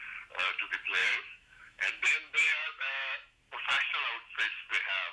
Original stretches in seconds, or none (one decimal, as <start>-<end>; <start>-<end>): 0.0-1.0; 3.4-5.1